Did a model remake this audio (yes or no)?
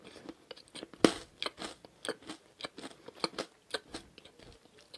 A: no